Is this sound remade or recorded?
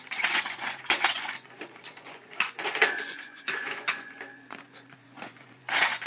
remade